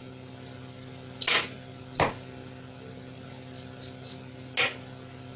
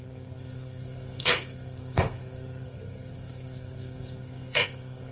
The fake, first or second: second